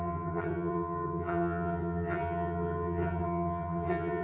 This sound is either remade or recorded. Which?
remade